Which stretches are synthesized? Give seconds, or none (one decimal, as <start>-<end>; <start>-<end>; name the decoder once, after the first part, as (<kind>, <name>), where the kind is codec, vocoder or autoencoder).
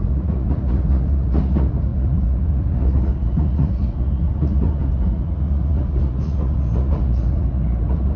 0.0-8.2 (vocoder, Vocos)